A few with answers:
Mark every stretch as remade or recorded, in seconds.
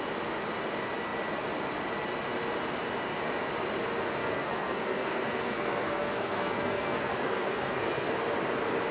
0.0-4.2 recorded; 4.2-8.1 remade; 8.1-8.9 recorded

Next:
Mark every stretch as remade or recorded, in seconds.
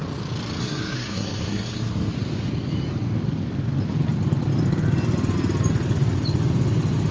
0.0-0.6 recorded; 0.6-2.1 remade; 2.1-7.1 recorded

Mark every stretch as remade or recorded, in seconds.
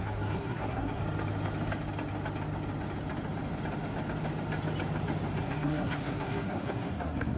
0.0-1.0 remade; 1.0-5.4 recorded; 5.4-7.4 remade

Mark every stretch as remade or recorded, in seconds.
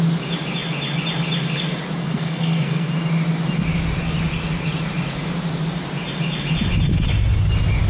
0.0-2.0 recorded; 2.0-2.9 remade; 2.9-7.9 recorded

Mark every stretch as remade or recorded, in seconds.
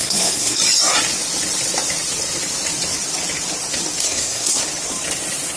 0.0-0.6 remade; 0.6-4.0 recorded; 4.0-4.6 remade; 4.6-5.6 recorded